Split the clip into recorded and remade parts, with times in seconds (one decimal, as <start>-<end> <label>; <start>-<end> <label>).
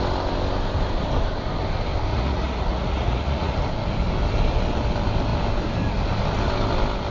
0.0-2.1 recorded; 2.1-3.7 remade; 3.7-7.1 recorded